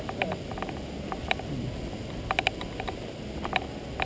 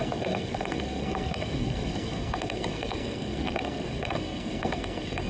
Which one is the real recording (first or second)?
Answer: first